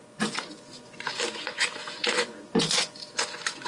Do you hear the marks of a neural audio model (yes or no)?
yes